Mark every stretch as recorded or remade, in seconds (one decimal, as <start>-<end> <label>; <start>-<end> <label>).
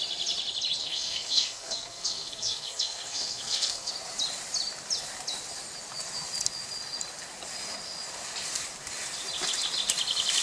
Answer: 0.0-0.8 recorded; 0.8-3.9 remade; 3.9-10.4 recorded